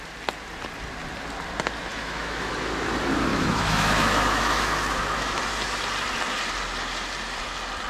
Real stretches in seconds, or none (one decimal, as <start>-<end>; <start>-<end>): 0.0-1.9; 2.5-3.3; 5.4-7.9